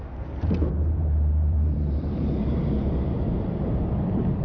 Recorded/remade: remade